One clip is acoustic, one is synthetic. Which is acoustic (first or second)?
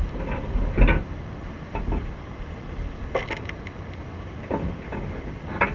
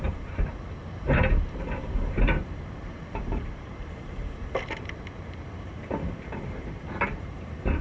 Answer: first